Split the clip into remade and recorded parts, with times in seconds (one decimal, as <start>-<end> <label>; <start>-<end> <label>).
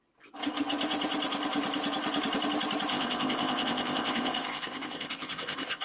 0.0-2.9 recorded; 2.9-5.8 remade